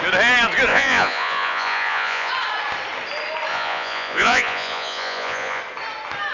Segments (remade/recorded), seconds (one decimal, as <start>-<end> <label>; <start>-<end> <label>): 0.0-0.7 recorded; 0.7-2.3 remade; 2.3-3.5 recorded; 3.5-5.6 remade; 5.6-6.3 recorded